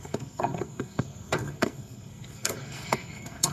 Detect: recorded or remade remade